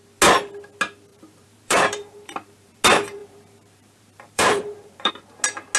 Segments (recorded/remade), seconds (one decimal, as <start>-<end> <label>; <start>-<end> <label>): 0.0-1.1 recorded; 1.1-2.8 remade; 2.8-3.2 recorded; 3.2-5.1 remade; 5.1-5.8 recorded